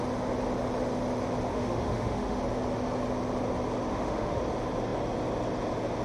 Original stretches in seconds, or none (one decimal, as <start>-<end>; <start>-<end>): 0.0-1.5; 2.4-3.9; 4.4-6.0